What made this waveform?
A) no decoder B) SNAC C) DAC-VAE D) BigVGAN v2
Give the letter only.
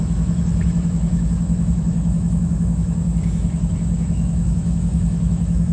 C